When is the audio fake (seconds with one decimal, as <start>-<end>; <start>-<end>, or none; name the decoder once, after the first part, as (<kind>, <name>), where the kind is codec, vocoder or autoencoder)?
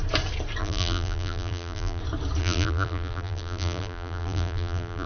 0.6-2.0 (vocoder, BigVGAN v2); 2.4-5.1